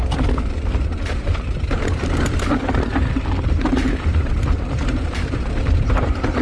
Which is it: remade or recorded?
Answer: remade